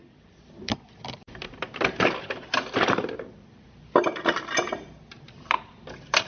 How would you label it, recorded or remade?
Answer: remade